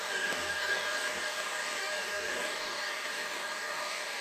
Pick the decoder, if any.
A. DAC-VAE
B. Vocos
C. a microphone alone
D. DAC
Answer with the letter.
D